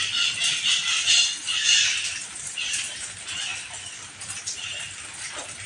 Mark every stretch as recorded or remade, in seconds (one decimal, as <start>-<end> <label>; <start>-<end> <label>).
0.0-5.7 recorded